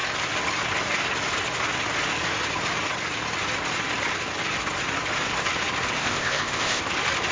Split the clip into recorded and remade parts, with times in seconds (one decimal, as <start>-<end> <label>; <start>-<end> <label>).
0.0-6.0 recorded; 6.0-6.8 remade; 6.8-7.3 recorded